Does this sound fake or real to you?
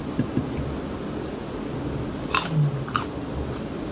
real